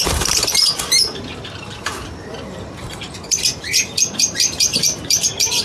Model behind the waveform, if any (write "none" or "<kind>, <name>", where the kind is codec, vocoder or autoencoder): vocoder, BigVGAN v2